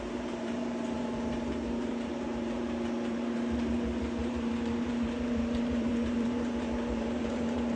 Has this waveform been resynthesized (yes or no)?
yes